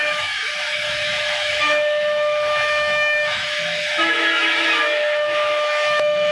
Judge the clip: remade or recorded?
remade